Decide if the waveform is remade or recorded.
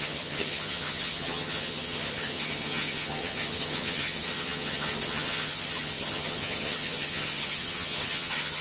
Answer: remade